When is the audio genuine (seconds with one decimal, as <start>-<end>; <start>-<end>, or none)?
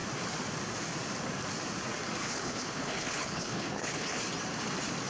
0.0-2.2; 4.2-5.1